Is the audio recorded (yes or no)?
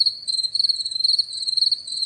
yes